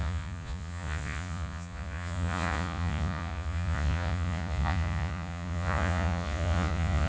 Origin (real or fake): fake